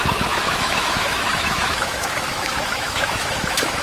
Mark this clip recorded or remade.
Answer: remade